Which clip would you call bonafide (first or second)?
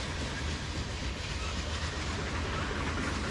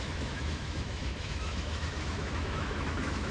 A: first